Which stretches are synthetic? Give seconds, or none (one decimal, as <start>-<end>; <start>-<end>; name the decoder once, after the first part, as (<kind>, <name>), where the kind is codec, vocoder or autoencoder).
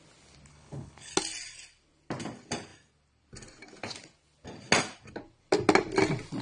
0.5-1.1 (codec, HILCodec)